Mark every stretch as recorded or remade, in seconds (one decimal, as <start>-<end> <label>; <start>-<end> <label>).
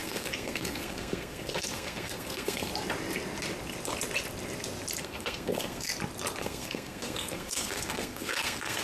0.0-2.7 remade; 2.7-5.0 recorded; 5.0-5.9 remade; 5.9-6.4 recorded; 6.4-8.8 remade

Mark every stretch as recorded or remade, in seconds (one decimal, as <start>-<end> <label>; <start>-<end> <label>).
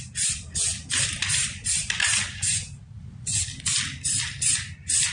0.0-5.1 recorded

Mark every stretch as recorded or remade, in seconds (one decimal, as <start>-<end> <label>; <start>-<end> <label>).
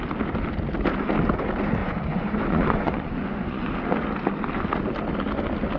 0.0-1.8 recorded; 1.8-3.8 remade; 3.8-5.8 recorded